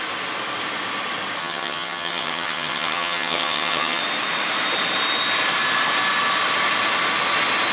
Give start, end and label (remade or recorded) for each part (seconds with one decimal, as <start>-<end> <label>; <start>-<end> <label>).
0.0-1.4 recorded; 1.4-4.0 remade; 4.0-7.7 recorded